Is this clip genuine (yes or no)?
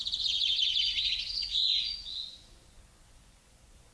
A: no